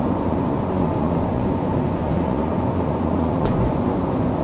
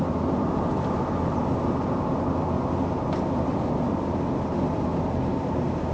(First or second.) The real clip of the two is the second